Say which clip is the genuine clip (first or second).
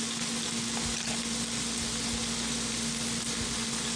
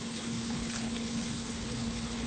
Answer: first